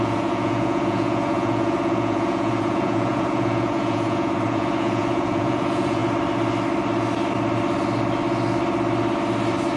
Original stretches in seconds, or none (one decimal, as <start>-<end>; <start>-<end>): 6.0-9.8